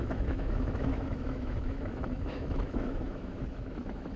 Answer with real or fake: fake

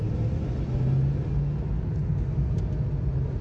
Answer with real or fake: real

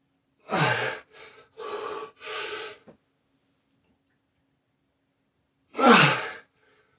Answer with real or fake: real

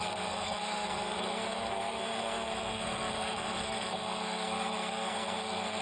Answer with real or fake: fake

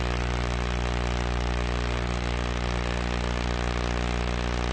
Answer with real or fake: real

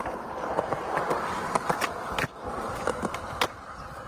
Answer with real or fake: real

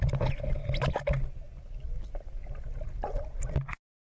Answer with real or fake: real